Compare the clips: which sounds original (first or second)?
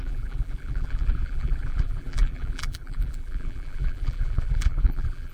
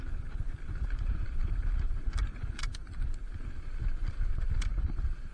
second